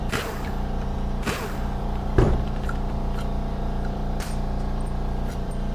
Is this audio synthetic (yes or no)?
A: yes